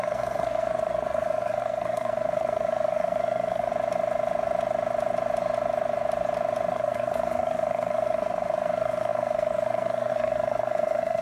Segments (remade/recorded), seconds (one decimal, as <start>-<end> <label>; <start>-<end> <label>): 0.0-3.7 remade; 3.7-6.7 recorded; 6.7-11.2 remade

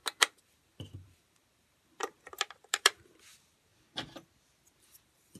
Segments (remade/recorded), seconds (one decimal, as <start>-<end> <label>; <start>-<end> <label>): 0.0-3.7 remade; 3.7-4.8 recorded; 4.8-5.4 remade

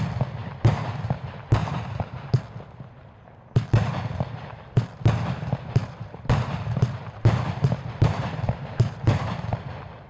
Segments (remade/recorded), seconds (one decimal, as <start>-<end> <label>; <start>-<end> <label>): 0.0-1.6 recorded; 1.6-2.4 remade; 2.4-5.8 recorded; 5.8-9.5 remade; 9.5-10.1 recorded